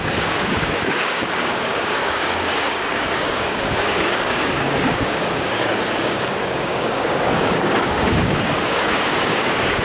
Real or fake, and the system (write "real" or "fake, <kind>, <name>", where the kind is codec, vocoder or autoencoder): fake, codec, DAC